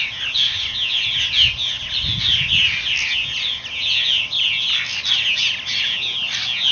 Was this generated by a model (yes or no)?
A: no